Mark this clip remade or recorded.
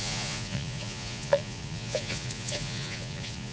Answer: remade